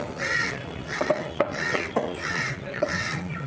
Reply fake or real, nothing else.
fake